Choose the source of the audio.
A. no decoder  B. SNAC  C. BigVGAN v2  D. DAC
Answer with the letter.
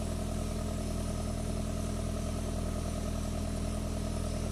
C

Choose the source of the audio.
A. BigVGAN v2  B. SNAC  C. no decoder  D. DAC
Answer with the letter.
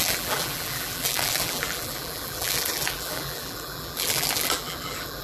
A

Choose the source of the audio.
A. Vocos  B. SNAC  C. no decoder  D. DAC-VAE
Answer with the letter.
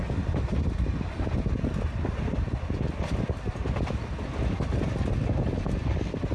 C